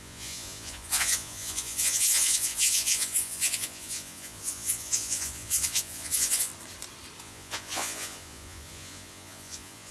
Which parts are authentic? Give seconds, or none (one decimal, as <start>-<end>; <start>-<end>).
6.5-7.2